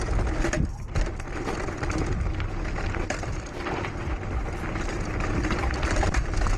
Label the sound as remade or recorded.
recorded